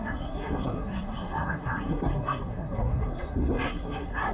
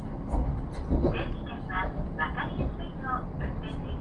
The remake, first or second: first